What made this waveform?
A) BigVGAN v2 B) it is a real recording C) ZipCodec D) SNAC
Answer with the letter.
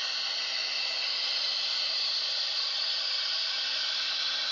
B